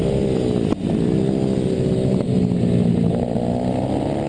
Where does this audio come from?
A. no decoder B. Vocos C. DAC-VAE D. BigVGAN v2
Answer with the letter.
A